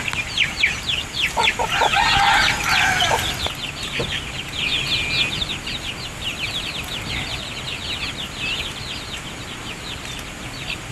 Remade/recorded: recorded